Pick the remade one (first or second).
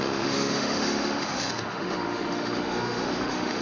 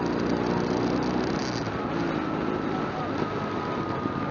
first